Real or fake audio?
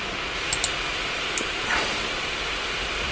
real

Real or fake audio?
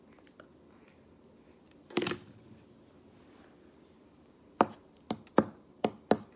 real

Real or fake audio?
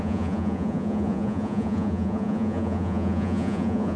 fake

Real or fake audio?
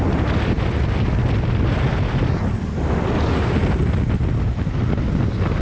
real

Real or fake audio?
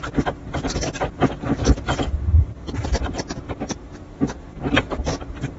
fake